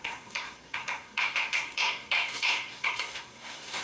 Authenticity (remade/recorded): remade